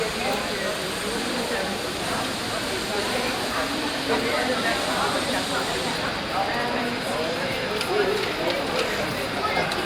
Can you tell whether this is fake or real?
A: fake